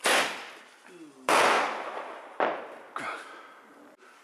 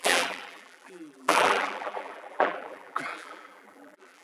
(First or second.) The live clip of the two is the first